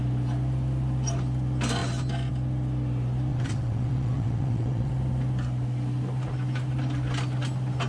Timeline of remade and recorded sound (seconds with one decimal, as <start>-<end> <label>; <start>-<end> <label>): 0.0-3.3 recorded; 3.3-4.9 remade; 4.9-7.9 recorded